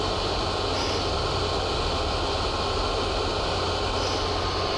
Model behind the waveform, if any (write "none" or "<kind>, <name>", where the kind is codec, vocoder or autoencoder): none